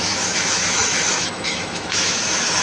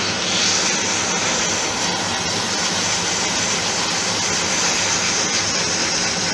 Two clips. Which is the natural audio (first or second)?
second